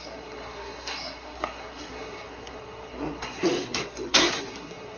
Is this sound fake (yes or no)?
yes